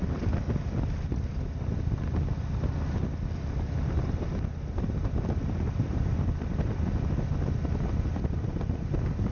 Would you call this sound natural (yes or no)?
yes